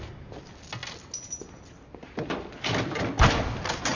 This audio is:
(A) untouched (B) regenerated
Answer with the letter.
A